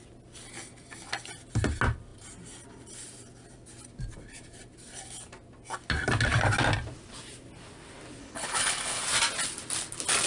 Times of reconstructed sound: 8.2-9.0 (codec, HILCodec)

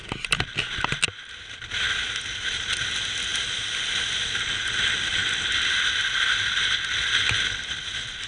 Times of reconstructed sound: none

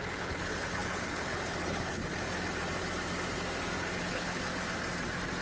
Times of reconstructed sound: 0.0-2.0 (codec, HILCodec); 4.1-4.5

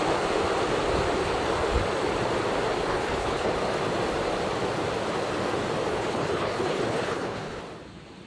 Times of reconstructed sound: 2.9-3.5 (codec, HILCodec); 5.9-7.6

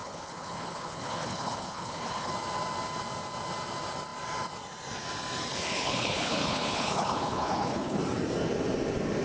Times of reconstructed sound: 0.0-2.3 (codec, HILCodec); 5.5-8.0

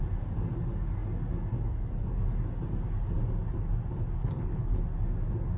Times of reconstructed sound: 4.2-4.8 (codec, HILCodec)